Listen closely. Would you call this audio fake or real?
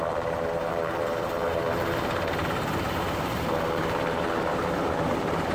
fake